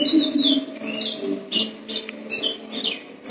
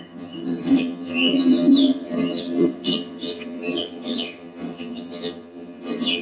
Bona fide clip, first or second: first